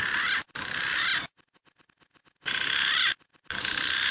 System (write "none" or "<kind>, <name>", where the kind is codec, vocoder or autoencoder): none